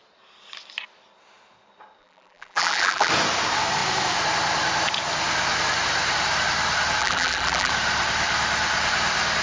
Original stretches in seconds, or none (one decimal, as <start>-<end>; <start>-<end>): 0.0-2.0; 3.1-7.0; 7.7-9.4